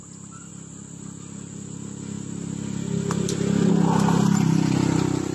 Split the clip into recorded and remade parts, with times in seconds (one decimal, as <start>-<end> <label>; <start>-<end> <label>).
0.0-5.3 recorded

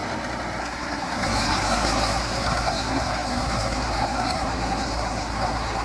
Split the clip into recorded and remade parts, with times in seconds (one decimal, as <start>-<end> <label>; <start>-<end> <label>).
0.0-0.6 recorded; 0.6-5.8 remade

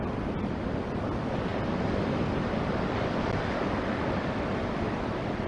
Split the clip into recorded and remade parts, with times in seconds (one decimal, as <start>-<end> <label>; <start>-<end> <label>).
0.0-5.5 recorded

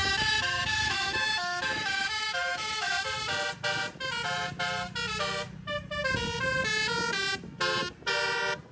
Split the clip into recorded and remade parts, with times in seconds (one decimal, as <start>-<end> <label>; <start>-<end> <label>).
0.0-2.9 remade; 2.9-8.7 recorded